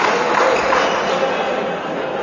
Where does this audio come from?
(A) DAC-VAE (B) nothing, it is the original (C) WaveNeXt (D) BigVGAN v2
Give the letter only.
B